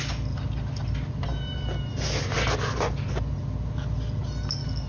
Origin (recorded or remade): recorded